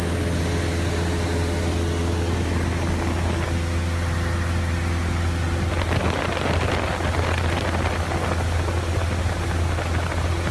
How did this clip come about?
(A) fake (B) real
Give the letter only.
B